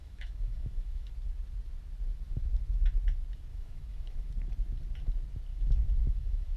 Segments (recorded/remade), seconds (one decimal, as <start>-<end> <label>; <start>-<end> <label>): 0.0-1.1 remade; 1.1-3.5 recorded; 3.5-4.3 remade; 4.3-5.5 recorded; 5.5-6.6 remade